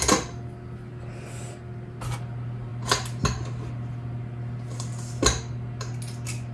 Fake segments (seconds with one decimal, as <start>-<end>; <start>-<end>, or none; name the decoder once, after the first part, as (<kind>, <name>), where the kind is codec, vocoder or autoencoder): none